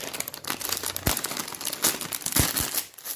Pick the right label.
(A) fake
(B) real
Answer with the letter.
B